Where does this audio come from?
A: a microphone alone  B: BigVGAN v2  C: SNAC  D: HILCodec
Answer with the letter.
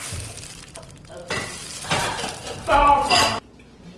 B